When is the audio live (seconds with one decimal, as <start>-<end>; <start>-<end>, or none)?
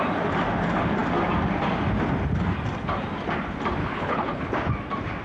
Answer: 0.0-3.8; 4.5-5.2